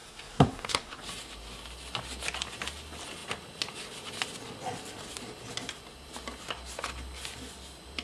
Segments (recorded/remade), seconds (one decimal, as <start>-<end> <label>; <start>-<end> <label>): 0.0-1.0 remade; 1.0-8.0 recorded